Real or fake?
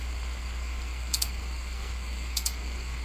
fake